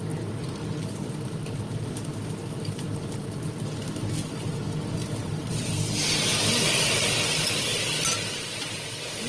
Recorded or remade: recorded